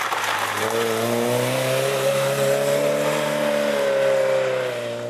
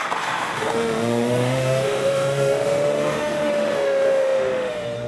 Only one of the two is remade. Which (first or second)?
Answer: second